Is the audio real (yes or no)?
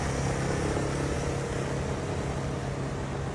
yes